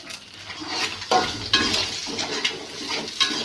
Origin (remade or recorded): recorded